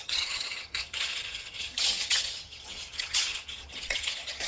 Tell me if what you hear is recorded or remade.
remade